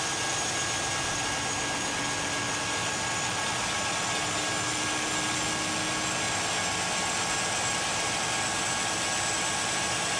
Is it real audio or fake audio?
real